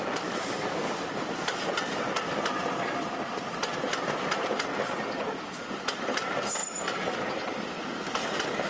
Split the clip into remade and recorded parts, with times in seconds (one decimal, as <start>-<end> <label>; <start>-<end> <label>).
0.0-3.9 recorded; 3.9-4.5 remade; 4.5-6.6 recorded; 6.6-8.2 remade; 8.2-8.7 recorded